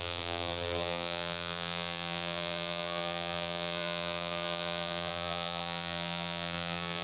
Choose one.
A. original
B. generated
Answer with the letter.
B